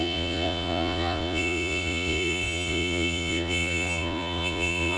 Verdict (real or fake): fake